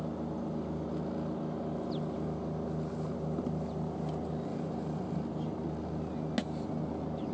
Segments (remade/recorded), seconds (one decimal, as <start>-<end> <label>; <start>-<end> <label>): 0.0-4.5 recorded; 4.5-5.2 remade; 5.2-7.3 recorded